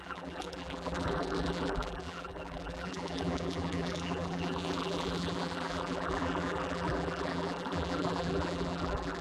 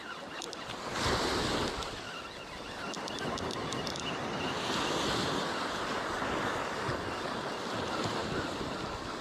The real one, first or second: second